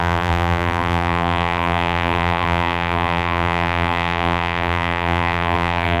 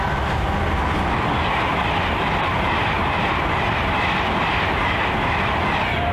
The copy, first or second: first